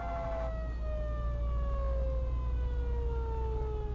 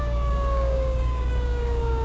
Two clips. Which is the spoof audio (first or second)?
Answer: second